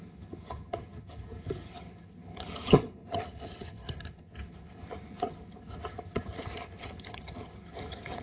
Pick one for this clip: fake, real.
fake